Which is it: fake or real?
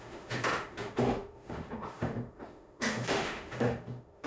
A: fake